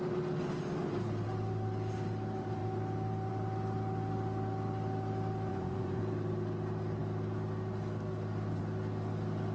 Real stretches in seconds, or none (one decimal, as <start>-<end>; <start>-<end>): 0.0-5.5; 6.0-9.5